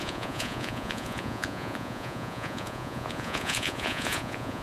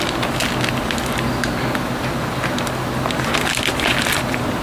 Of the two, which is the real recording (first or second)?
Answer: second